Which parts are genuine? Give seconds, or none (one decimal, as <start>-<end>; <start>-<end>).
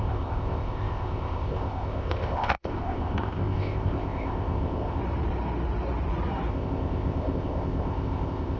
5.0-6.5